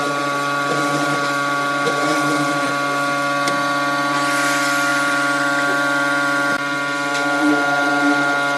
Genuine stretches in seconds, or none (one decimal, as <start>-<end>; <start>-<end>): 0.0-2.1; 2.7-4.9; 7.5-8.6